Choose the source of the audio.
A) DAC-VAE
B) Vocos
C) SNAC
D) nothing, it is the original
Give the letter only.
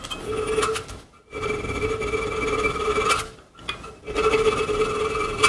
D